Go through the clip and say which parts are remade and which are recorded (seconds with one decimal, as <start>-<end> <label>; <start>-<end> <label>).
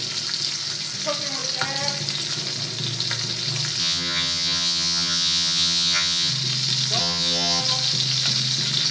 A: 0.0-3.8 recorded; 3.8-6.3 remade; 6.3-7.0 recorded; 7.0-7.6 remade; 7.6-8.9 recorded